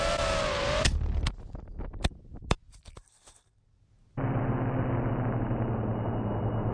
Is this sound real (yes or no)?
yes